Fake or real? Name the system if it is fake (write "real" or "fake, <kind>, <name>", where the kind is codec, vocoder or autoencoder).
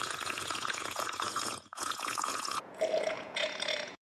fake, vocoder, Vocos